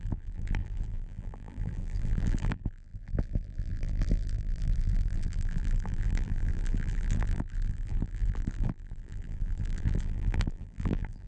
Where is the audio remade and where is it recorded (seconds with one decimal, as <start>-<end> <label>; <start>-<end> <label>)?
0.0-11.3 remade

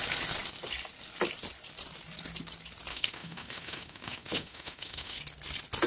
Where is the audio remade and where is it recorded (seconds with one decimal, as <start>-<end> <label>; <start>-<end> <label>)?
0.0-2.9 recorded; 2.9-5.2 remade; 5.2-5.9 recorded

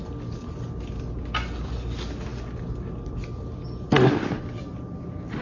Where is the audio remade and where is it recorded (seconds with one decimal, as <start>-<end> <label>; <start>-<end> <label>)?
0.0-5.4 recorded

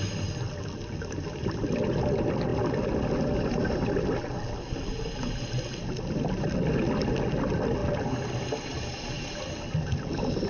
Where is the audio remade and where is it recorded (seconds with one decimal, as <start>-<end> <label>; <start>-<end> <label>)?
0.0-10.5 recorded

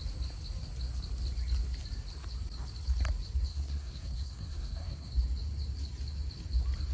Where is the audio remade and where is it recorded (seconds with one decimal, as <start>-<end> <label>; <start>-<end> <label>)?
0.0-3.5 recorded; 3.5-5.1 remade; 5.1-6.9 recorded

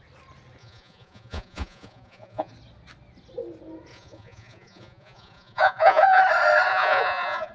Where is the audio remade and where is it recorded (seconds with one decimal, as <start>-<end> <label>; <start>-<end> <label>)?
0.0-0.6 recorded; 0.6-2.5 remade; 2.5-3.9 recorded; 3.9-6.2 remade; 6.2-6.7 recorded; 6.7-7.5 remade

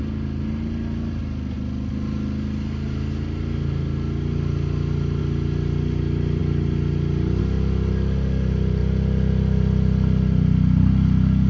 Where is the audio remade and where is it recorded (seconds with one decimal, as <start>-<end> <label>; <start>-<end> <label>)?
0.0-11.5 recorded